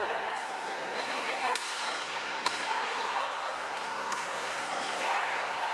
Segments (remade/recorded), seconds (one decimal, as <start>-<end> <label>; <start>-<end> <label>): 0.0-5.7 remade